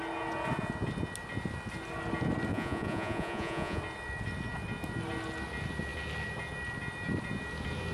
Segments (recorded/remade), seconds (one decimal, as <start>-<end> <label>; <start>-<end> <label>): 0.0-2.5 recorded; 2.5-3.8 remade; 3.8-7.9 recorded